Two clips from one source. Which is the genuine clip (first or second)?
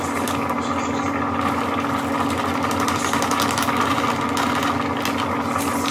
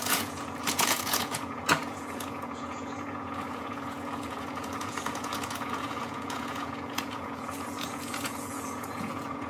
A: first